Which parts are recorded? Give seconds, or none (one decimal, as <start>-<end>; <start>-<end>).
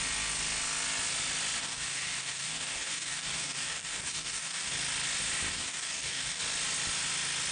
0.0-1.6; 4.7-5.5; 6.4-7.5